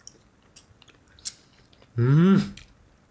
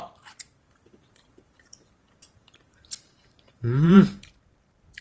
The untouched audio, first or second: first